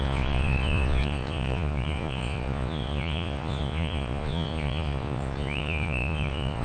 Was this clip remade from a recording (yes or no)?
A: yes